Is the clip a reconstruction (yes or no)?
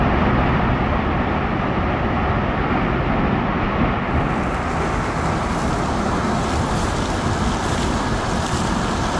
no